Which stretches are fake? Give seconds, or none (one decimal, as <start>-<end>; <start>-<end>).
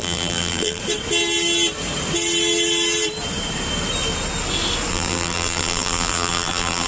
0.0-0.8; 4.9-6.9